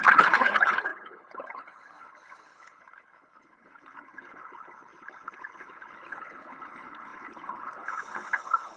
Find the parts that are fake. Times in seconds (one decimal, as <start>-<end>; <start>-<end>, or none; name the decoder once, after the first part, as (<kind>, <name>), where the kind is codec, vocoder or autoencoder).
0.0-8.8 (codec, HILCodec)